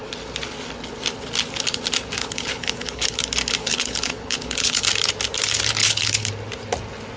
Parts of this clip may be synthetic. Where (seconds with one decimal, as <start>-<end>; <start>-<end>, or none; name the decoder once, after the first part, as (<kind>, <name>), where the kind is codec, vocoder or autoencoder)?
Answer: 2.2-3.2 (codec, HILCodec); 3.6-4.8; 5.8-6.3